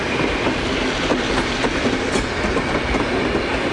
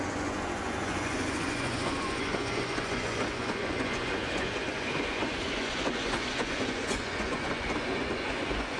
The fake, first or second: second